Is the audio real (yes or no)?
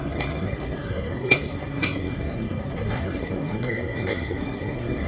no